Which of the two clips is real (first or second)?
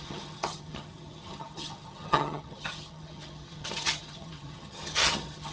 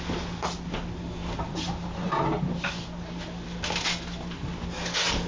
second